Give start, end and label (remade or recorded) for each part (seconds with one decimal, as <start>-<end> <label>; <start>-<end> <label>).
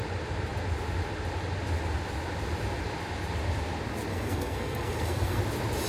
0.0-4.1 recorded; 4.1-5.4 remade; 5.4-5.9 recorded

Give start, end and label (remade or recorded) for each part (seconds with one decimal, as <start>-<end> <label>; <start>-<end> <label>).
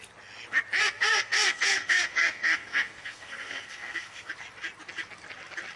0.0-0.8 recorded; 0.8-4.3 remade; 4.3-5.8 recorded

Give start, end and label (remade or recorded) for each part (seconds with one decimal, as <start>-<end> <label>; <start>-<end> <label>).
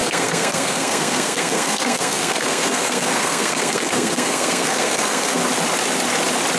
0.0-5.4 remade; 5.4-6.6 recorded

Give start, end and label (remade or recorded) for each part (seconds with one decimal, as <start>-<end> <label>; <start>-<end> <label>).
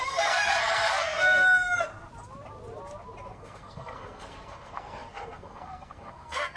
0.0-1.9 remade; 1.9-3.3 recorded; 3.3-6.6 remade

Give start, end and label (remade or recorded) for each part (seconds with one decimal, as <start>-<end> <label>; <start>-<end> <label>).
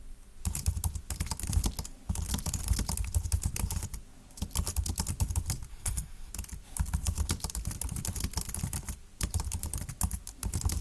0.0-5.7 recorded; 5.7-6.3 remade; 6.3-10.8 recorded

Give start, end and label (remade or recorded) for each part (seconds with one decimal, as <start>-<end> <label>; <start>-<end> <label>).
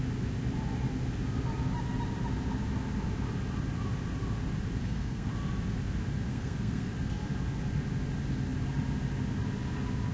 0.0-4.8 recorded; 4.8-5.3 remade; 5.3-6.3 recorded; 6.3-6.9 remade; 6.9-10.1 recorded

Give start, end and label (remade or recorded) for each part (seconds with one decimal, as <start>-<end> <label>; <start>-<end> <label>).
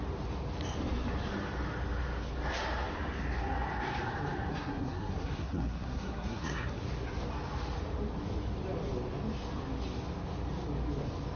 0.0-4.5 recorded; 4.5-6.8 remade; 6.8-11.4 recorded